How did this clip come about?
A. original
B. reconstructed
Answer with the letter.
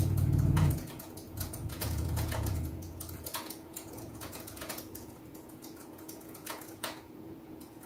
B